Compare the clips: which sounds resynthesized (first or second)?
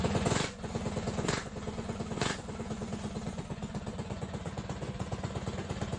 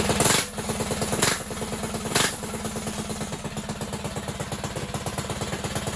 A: first